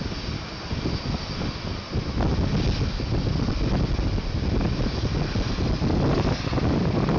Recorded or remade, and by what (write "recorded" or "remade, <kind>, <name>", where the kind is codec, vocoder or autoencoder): recorded